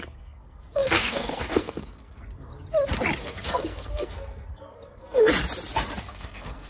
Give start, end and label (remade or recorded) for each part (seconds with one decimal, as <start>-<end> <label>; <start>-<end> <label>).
0.0-2.5 remade; 2.5-3.2 recorded; 3.2-5.3 remade; 5.3-6.1 recorded; 6.1-6.7 remade